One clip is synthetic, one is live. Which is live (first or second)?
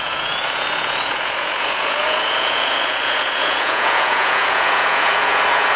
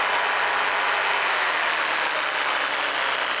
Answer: second